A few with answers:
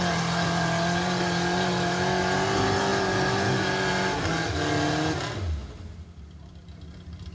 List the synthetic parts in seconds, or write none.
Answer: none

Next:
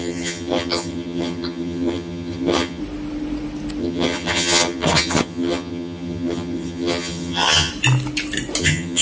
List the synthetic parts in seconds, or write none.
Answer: 0.0-2.8; 3.8-7.7; 8.6-9.0

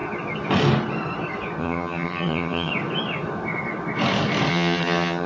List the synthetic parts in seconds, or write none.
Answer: 1.6-2.7; 4.5-5.3

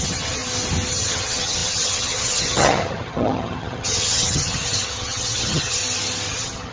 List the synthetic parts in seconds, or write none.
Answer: 0.0-0.4; 0.9-5.8; 6.3-6.7

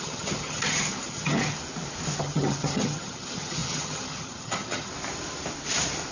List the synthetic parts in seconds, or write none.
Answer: 0.0-1.6; 2.2-4.9

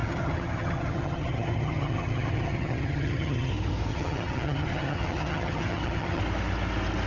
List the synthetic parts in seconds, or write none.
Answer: 0.0-3.5; 3.9-6.2

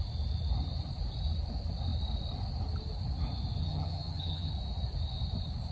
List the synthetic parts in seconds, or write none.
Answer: 3.6-4.5

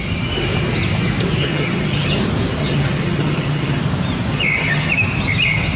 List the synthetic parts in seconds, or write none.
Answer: 1.4-2.2; 2.6-3.8; 4.3-4.9